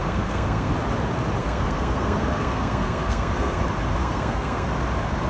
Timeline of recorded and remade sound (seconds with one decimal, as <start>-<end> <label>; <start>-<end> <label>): 0.0-0.7 remade; 0.7-1.4 recorded; 1.4-3.6 remade; 3.6-4.0 recorded; 4.0-4.7 remade; 4.7-5.3 recorded